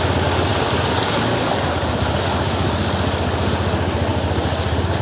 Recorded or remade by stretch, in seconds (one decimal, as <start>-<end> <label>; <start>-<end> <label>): 0.0-5.0 recorded

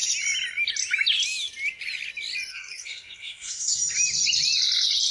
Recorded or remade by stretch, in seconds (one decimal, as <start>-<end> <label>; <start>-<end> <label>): 0.0-2.5 recorded; 2.5-3.8 remade; 3.8-5.1 recorded